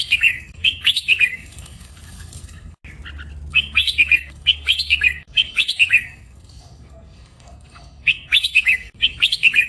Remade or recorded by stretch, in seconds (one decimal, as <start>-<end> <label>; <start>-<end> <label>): 0.0-2.8 remade; 2.8-3.5 recorded; 3.5-9.7 remade

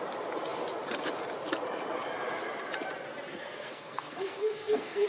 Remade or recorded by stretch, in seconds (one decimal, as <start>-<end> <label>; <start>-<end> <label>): 0.0-3.3 recorded; 3.3-5.1 remade

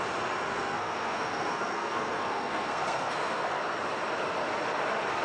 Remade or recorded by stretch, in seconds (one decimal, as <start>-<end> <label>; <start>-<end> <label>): 0.0-0.5 recorded; 0.5-3.6 remade; 3.6-5.2 recorded

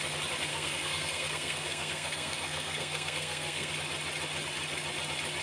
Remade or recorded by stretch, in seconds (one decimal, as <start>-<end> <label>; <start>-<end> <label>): 0.0-0.5 recorded; 0.5-3.7 remade; 3.7-5.4 recorded

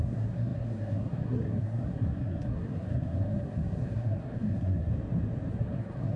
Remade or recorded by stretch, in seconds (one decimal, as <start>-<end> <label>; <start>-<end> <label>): 0.0-4.9 remade; 4.9-5.5 recorded; 5.5-6.2 remade

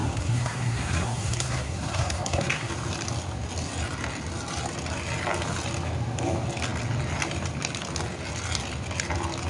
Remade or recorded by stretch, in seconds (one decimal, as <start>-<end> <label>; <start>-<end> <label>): 0.0-2.7 remade; 2.7-9.5 recorded

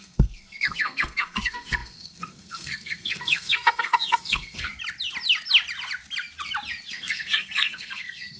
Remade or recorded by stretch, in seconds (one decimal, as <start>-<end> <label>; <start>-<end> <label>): 0.0-4.7 remade; 4.7-6.9 recorded; 6.9-8.4 remade